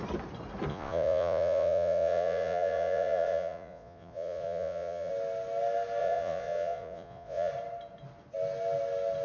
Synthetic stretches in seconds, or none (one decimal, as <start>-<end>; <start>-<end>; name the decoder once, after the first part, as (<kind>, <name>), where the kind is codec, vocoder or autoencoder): 0.7-5.1 (vocoder, Vocos); 6.0-7.5